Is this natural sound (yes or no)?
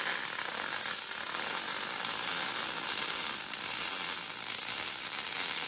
yes